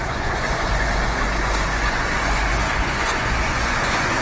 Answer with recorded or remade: remade